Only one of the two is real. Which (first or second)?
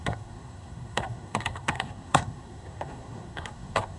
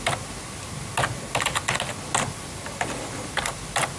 second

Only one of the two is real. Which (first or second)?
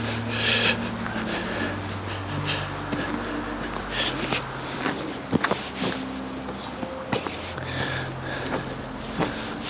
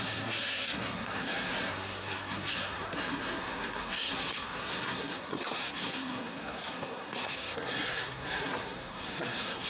first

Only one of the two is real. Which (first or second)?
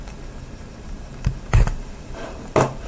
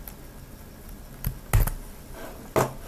second